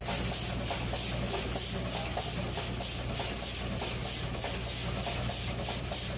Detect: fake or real real